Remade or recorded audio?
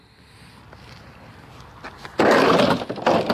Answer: recorded